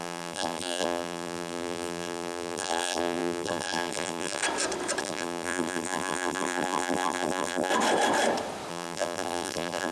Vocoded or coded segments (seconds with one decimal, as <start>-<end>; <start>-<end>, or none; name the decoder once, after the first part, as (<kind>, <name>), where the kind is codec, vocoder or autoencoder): 0.0-4.4 (vocoder, BigVGAN v2); 5.0-7.7; 8.7-9.9